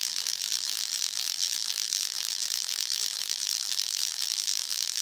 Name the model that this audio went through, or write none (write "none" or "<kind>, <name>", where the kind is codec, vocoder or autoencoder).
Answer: vocoder, BigVGAN v2